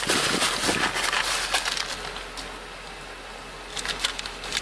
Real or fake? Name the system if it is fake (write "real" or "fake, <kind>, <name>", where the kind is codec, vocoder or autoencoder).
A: real